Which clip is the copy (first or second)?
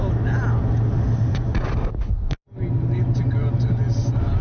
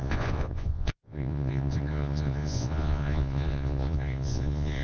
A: second